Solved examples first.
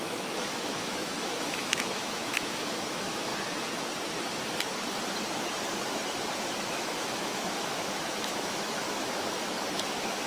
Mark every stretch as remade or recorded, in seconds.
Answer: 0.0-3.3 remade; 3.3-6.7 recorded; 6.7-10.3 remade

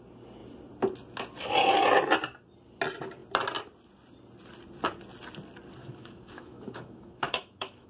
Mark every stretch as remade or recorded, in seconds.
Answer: 0.0-5.8 recorded; 5.8-7.9 remade

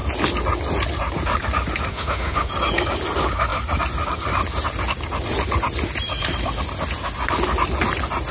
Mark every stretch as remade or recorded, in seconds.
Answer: 0.0-1.9 recorded; 1.9-2.5 remade; 2.5-8.3 recorded

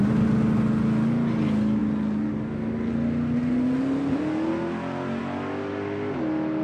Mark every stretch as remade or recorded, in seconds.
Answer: 0.0-6.6 recorded

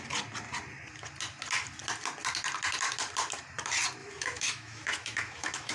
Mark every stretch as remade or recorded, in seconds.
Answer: 0.0-4.0 recorded; 4.0-5.7 remade